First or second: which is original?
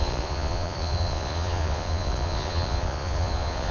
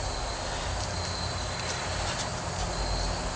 second